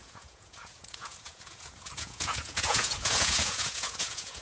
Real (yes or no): no